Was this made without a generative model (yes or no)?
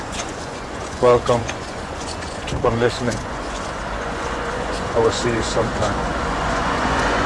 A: no